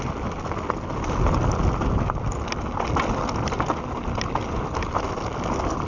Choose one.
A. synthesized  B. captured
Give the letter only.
B